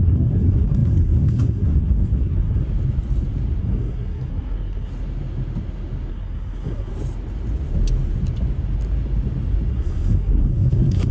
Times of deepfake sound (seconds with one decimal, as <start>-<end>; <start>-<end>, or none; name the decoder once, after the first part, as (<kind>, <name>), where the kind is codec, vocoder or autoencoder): 0.0-2.6 (codec, SNAC); 3.6-4.9; 6.1-6.9; 9.7-11.1